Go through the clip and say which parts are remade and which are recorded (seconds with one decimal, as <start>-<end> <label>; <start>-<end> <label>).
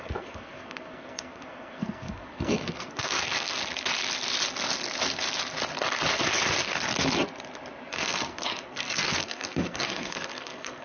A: 0.0-3.6 remade; 3.6-7.9 recorded; 7.9-10.8 remade